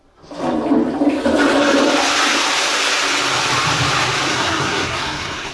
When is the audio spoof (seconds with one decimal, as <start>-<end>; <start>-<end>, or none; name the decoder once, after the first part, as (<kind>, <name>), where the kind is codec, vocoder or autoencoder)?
4.3-5.5 (codec, SNAC)